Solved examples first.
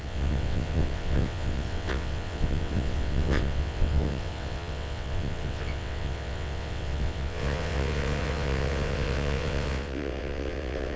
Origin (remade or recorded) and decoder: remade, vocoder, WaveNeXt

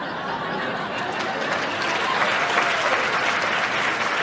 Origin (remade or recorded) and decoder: recorded